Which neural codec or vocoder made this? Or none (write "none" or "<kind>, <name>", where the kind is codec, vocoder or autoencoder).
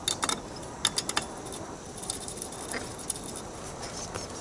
none